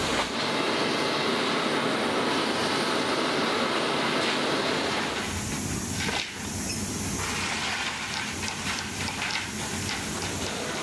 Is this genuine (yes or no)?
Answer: yes